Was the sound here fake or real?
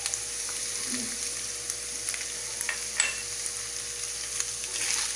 real